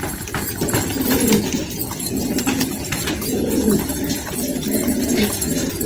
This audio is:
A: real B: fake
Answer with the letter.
A